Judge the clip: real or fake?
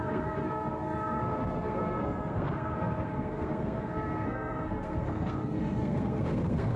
fake